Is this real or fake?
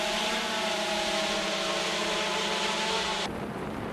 fake